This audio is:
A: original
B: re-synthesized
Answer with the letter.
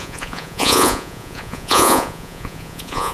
B